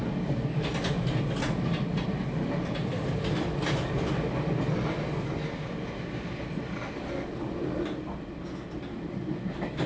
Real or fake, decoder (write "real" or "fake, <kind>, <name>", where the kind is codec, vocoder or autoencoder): real